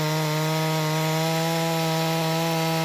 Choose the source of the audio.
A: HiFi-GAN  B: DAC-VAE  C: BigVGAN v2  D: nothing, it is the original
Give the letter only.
D